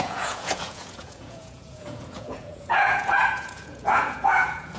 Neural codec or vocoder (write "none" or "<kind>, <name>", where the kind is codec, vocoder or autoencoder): vocoder, Vocos